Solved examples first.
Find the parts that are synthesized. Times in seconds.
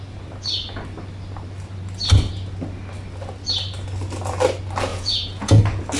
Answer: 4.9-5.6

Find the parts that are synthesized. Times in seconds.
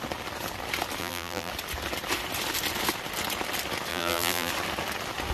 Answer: 1.0-1.5; 3.9-4.5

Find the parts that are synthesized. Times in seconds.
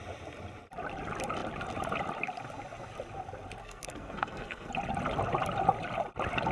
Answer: 3.6-4.7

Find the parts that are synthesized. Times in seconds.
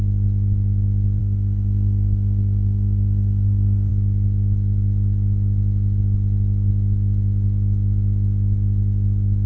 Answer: 1.2-3.9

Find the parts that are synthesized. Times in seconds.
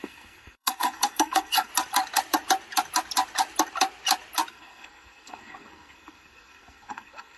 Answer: 0.0-1.7; 4.5-7.4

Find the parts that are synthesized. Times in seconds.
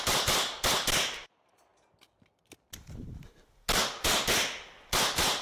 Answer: none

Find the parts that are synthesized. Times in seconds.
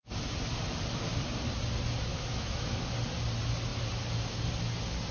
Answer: 2.1-2.9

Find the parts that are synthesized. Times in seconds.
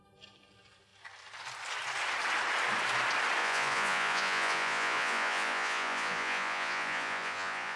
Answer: 3.4-7.8